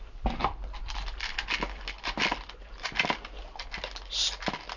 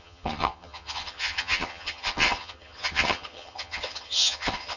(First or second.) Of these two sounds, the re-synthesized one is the second